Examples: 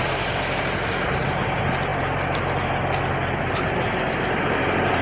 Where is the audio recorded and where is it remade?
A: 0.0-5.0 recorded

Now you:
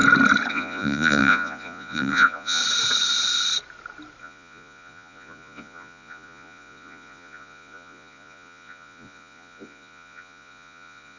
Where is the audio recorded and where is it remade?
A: 0.0-0.5 recorded; 0.5-2.6 remade; 2.6-4.2 recorded; 4.2-11.2 remade

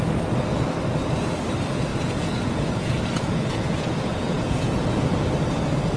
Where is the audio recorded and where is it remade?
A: 0.0-1.9 recorded; 1.9-5.3 remade; 5.3-6.0 recorded

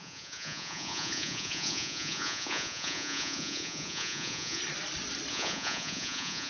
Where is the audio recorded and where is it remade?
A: 0.0-4.6 remade; 4.6-5.3 recorded; 5.3-6.5 remade

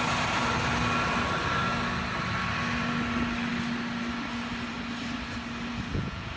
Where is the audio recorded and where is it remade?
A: 0.0-5.9 recorded; 5.9-6.4 remade

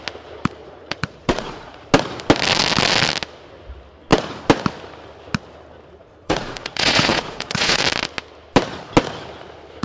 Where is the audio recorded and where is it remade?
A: 0.0-0.6 recorded; 0.6-1.8 remade; 1.8-6.0 recorded; 6.0-7.8 remade; 7.8-9.8 recorded

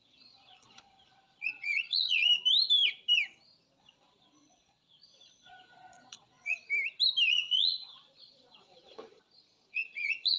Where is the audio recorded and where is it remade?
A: 0.0-2.3 remade; 2.3-3.8 recorded; 3.8-6.6 remade; 6.6-7.3 recorded; 7.3-10.4 remade

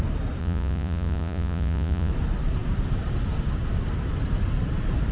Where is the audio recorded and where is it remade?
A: 0.0-0.4 recorded; 0.4-2.1 remade; 2.1-5.1 recorded